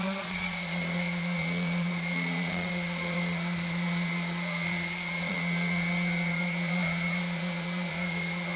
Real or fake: fake